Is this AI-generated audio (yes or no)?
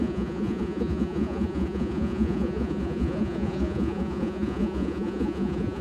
yes